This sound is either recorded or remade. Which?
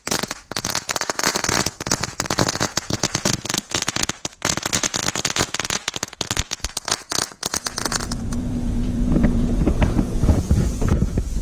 remade